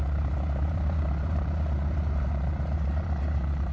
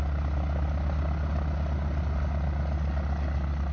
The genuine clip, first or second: second